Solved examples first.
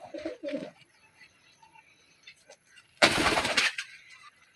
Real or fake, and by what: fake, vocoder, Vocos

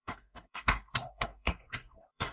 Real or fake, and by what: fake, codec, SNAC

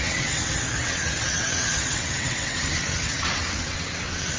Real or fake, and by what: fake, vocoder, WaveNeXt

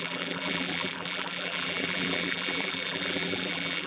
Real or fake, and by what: fake, vocoder, BigVGAN v2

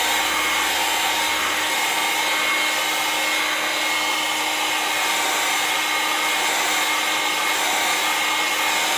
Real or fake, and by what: real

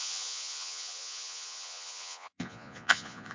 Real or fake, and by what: fake, vocoder, Vocos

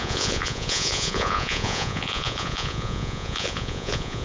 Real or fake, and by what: fake, vocoder, Vocos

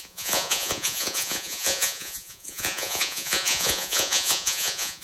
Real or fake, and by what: fake, vocoder, Vocos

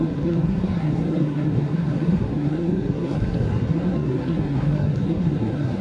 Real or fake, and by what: fake, codec, SNAC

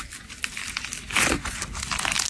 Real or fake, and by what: real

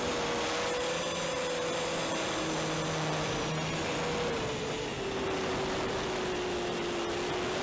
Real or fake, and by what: real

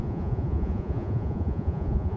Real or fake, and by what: fake, vocoder, Vocos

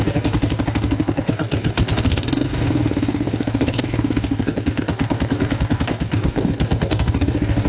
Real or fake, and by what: fake, codec, DAC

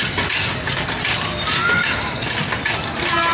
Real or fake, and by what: fake, vocoder, BigVGAN v2